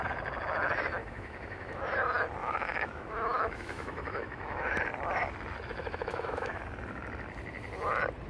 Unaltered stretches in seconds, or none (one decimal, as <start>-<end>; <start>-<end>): 0.0-1.0; 1.8-2.4; 4.8-5.8; 6.6-8.3